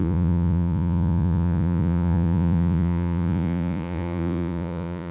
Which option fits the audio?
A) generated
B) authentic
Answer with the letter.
A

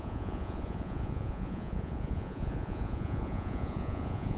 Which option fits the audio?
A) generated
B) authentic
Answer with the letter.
A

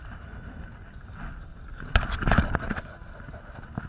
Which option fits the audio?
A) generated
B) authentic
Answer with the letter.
B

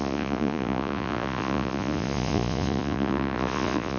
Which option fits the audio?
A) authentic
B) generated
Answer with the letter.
B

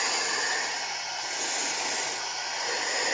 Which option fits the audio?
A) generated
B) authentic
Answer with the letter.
B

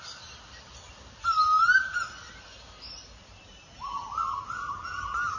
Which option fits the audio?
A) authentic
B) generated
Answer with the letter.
A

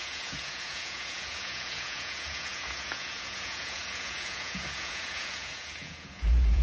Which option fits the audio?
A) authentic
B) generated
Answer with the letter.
B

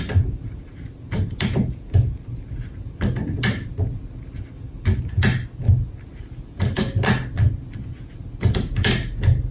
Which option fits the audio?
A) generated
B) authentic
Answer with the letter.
B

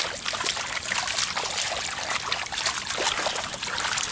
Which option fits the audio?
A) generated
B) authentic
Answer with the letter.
B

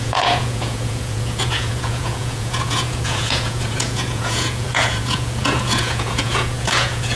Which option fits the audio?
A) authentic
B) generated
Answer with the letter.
B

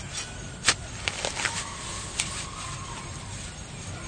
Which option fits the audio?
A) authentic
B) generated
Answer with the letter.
A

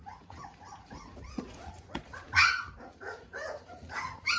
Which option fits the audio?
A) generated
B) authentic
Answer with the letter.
A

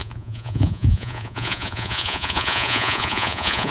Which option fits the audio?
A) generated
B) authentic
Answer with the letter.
A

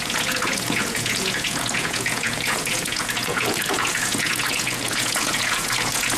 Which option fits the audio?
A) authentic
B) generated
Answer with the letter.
B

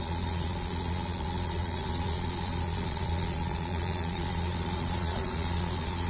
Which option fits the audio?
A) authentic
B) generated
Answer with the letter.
B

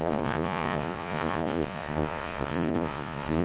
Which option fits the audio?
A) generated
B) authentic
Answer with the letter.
A